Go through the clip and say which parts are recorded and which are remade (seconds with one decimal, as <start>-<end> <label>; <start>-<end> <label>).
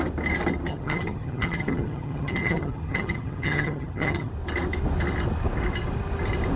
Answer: 0.0-0.7 recorded; 0.7-4.3 remade; 4.3-6.6 recorded